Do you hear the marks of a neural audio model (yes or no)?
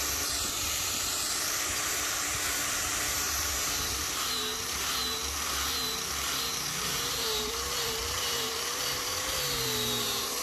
yes